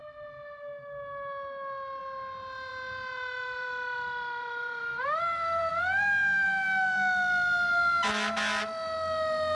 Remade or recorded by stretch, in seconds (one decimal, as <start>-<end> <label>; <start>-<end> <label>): 0.0-2.7 recorded; 2.7-5.7 remade; 5.7-9.6 recorded